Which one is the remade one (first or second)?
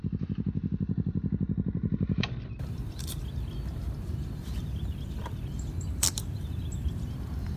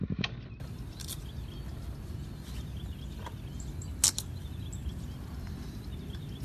first